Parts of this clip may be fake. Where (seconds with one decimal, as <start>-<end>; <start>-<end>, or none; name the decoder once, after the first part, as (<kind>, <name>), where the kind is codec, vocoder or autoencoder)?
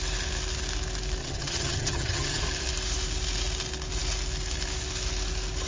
1.2-2.4 (vocoder, HiFi-GAN)